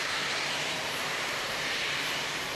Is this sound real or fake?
fake